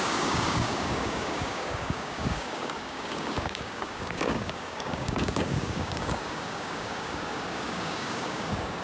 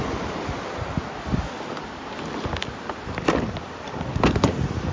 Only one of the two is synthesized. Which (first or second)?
first